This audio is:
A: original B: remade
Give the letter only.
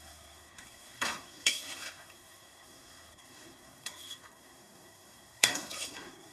B